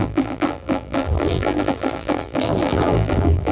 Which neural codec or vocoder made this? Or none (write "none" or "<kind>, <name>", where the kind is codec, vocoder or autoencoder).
vocoder, BigVGAN v2